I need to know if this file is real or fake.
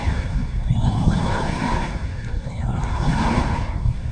fake